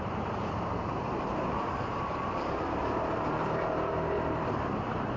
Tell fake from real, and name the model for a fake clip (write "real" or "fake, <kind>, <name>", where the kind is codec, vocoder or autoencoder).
fake, vocoder, BigVGAN v2